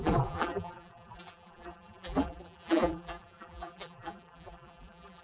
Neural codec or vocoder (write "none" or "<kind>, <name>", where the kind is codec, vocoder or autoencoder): vocoder, BigVGAN v2